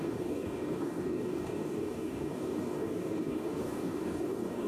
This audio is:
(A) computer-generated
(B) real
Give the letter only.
A